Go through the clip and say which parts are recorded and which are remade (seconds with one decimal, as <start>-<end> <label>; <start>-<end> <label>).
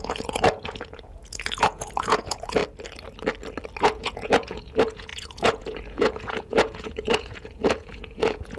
0.0-2.6 remade; 2.6-3.8 recorded; 3.8-8.6 remade